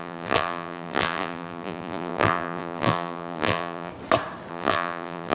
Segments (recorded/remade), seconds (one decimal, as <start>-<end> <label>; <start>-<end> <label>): 0.0-3.9 remade; 3.9-4.5 recorded; 4.5-5.3 remade